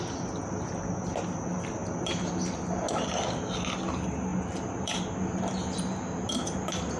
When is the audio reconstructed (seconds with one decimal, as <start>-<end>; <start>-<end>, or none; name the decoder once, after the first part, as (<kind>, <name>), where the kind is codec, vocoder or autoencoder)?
4.3-5.0 (vocoder, BigVGAN v2)